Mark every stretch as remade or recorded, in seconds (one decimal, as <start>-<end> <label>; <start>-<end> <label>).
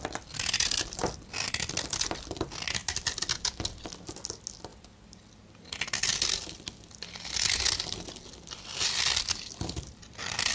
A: 0.0-10.5 recorded